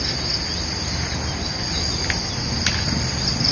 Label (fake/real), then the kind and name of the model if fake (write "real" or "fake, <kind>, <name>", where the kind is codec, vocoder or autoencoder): real